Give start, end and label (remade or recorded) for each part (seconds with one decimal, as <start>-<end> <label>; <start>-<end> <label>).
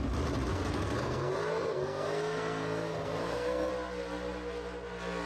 0.0-0.5 recorded; 0.5-3.7 remade; 3.7-5.3 recorded